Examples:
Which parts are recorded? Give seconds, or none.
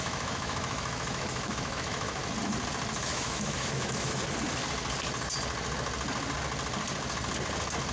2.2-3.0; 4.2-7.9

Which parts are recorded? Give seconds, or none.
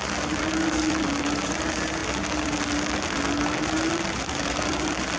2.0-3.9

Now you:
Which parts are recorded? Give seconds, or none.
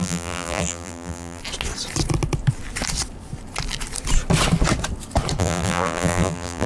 1.4-5.4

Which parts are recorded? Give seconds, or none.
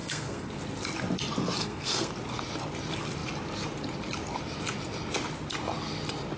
0.5-1.6; 2.1-6.4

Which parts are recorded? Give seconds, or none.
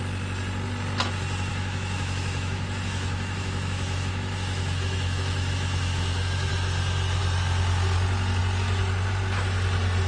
0.0-1.5; 6.5-10.1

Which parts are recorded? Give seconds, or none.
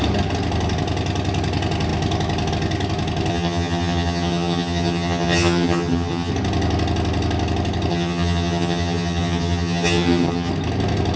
0.0-3.3; 6.3-7.9; 10.5-11.2